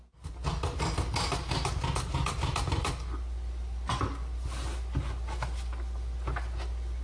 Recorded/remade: recorded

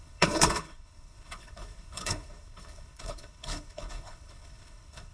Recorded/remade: remade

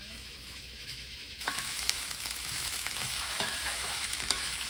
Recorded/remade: remade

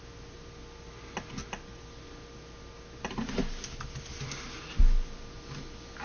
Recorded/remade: recorded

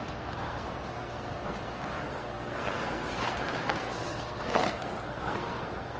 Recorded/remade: remade